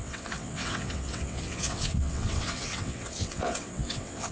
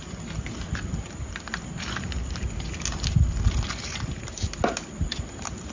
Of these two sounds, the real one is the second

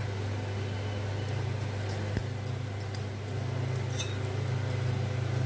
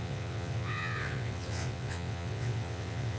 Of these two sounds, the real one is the first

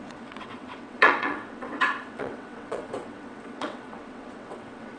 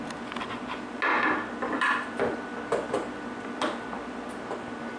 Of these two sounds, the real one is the second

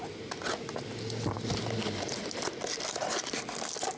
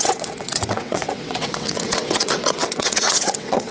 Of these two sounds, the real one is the first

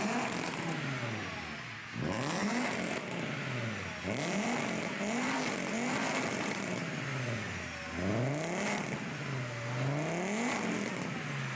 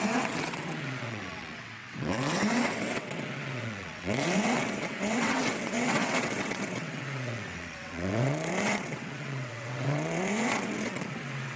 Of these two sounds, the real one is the first